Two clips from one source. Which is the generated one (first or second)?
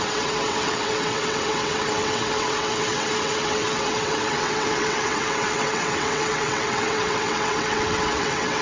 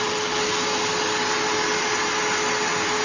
first